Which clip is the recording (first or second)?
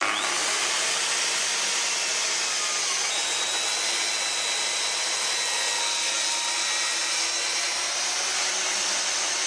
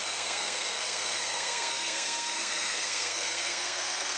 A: first